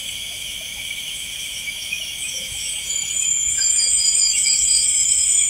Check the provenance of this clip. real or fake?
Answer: fake